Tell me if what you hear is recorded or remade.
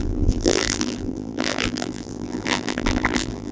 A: remade